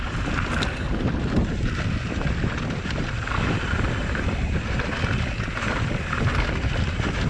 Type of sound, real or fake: real